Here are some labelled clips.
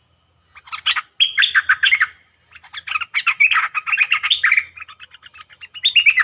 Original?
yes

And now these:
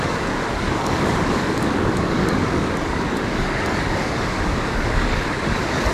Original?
no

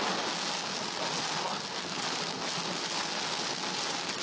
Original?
yes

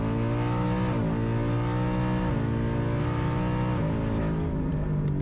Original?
yes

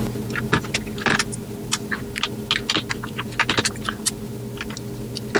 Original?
yes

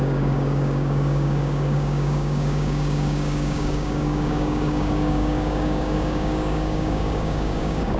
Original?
no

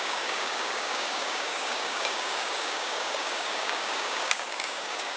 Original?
no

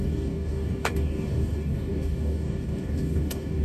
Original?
no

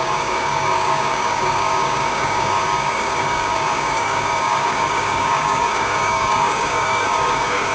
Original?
no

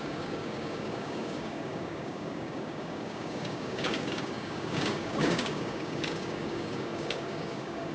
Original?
no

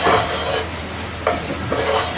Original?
yes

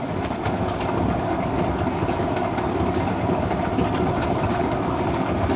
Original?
no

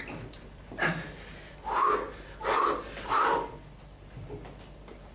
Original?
yes